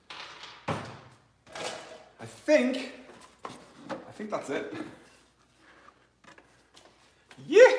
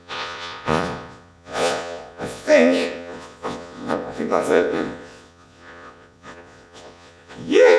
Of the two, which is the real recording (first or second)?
first